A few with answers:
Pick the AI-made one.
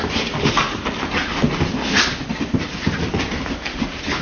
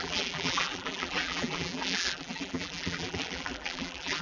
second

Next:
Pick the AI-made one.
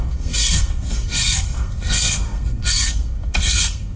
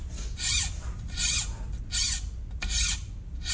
first